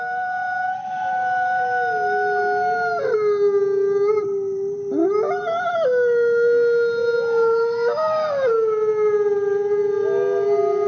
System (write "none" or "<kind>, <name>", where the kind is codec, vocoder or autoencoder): none